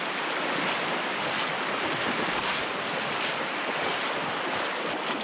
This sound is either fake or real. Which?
real